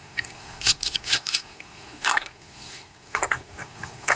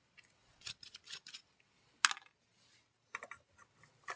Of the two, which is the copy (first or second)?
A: first